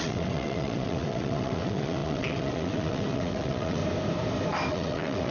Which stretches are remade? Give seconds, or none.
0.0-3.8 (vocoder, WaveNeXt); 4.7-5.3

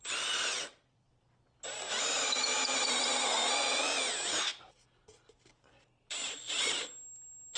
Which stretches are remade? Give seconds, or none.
0.5-1.1 (vocoder, WaveNeXt)

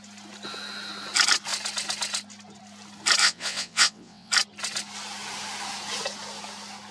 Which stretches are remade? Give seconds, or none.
3.2-4.3 (vocoder, WaveNeXt)

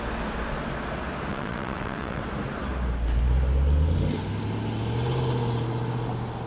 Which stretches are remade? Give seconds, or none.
1.3-2.2 (vocoder, WaveNeXt)